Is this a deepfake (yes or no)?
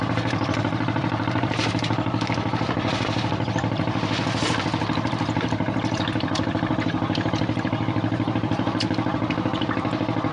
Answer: yes